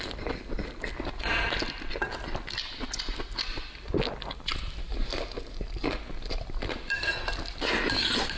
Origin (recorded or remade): recorded